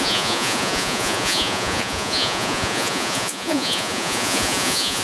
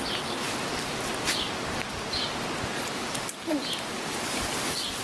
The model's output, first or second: first